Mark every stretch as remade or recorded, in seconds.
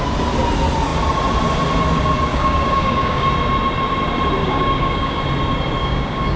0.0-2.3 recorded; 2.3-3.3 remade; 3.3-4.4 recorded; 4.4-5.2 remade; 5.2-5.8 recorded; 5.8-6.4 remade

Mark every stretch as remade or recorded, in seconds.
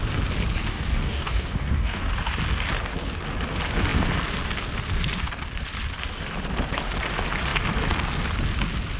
0.0-0.7 recorded; 0.7-2.1 remade; 2.1-9.0 recorded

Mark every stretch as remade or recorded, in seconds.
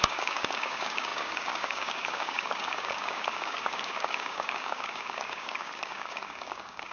0.0-6.9 remade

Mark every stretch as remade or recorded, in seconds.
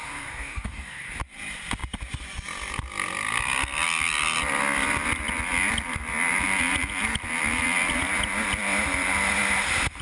0.0-1.1 remade; 1.1-10.0 recorded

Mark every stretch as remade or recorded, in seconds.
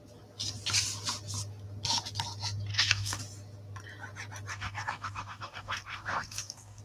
0.0-2.7 recorded; 2.7-3.2 remade; 3.2-4.5 recorded; 4.5-6.8 remade